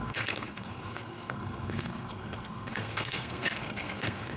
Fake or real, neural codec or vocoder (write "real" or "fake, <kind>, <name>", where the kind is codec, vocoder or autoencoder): fake, codec, SNAC